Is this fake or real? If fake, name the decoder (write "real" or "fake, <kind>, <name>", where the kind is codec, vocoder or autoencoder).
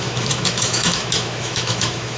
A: fake, autoencoder, DAC-VAE